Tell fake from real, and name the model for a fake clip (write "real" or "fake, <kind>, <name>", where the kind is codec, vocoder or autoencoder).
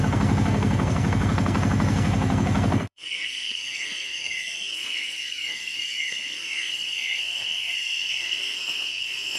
fake, codec, SNAC